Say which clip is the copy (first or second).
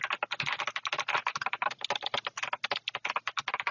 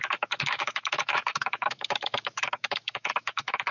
second